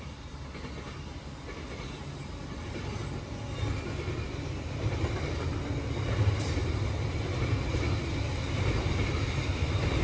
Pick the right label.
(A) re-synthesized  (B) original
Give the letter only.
B